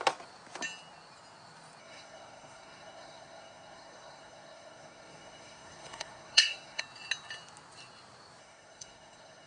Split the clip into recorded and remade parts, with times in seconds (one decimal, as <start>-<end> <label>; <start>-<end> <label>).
0.0-1.8 recorded; 1.8-6.8 remade; 6.8-8.4 recorded; 8.4-9.5 remade